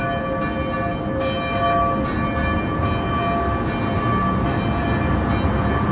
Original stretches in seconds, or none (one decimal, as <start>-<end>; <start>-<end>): 0.0-5.9